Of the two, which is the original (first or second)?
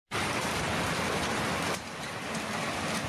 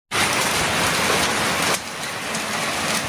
second